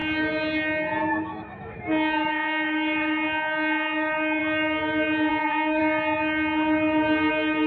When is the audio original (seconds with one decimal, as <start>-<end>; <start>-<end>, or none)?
0.0-1.1; 4.4-5.3; 5.8-7.3